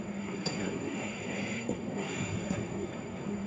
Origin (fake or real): fake